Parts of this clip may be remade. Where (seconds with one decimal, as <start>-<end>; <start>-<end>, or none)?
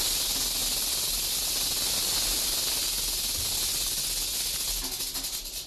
none